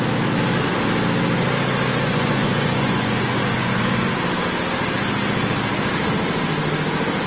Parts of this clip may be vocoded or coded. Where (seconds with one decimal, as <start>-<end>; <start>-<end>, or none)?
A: 1.9-3.8